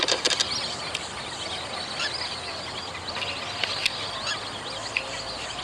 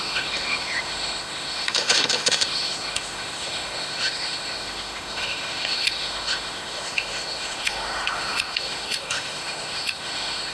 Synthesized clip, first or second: second